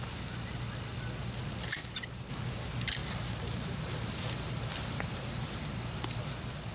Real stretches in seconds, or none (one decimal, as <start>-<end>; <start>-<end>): 0.0-0.9; 1.4-1.8; 2.3-3.0